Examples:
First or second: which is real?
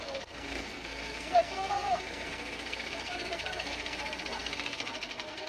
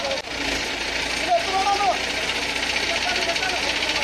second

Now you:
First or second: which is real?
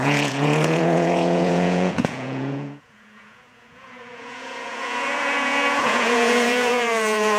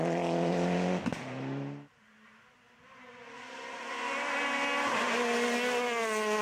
second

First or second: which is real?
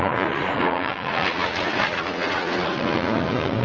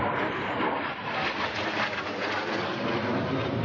second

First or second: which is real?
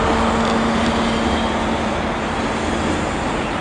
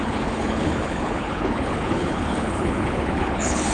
first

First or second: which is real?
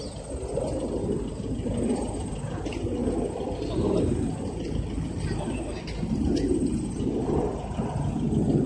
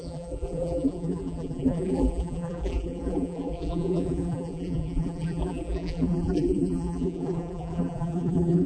first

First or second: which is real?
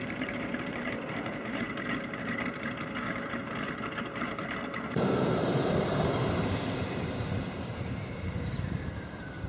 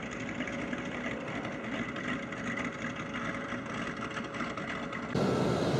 second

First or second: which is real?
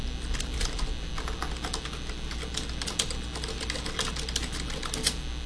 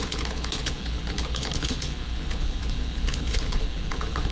first